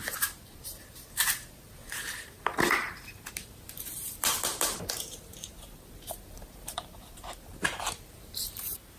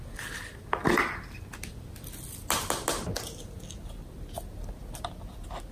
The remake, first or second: first